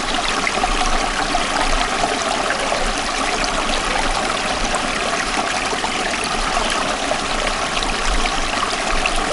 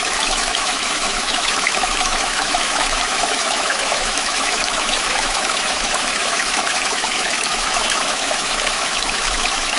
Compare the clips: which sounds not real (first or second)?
second